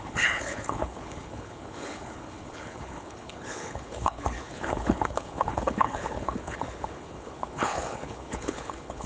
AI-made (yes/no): yes